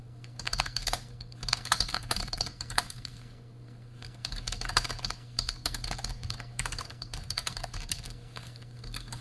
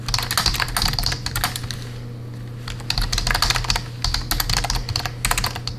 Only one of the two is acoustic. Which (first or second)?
second